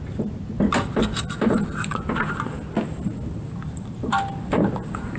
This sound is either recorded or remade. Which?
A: recorded